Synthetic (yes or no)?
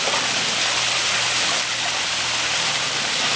no